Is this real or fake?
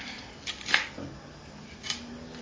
real